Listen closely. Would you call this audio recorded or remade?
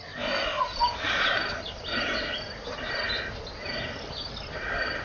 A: recorded